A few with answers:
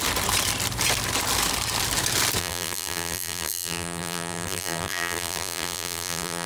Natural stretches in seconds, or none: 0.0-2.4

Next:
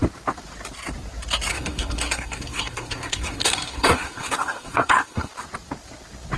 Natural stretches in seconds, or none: 0.0-1.5; 5.3-6.4